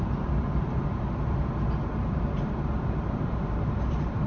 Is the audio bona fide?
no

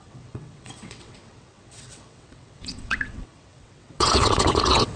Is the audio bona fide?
no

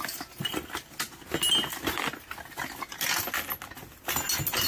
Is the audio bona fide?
yes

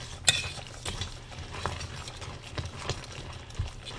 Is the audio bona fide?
yes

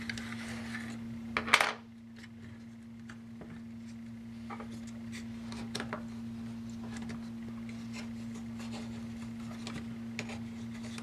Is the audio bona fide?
yes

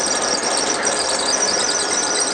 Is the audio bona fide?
yes